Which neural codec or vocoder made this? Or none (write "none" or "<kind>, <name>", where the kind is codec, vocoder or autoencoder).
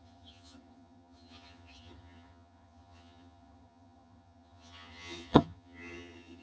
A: vocoder, HiFi-GAN